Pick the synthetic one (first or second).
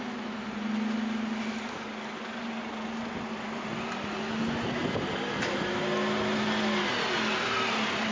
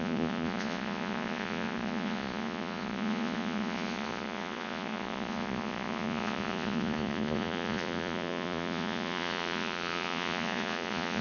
second